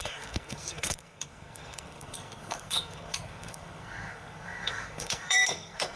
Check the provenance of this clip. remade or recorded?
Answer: remade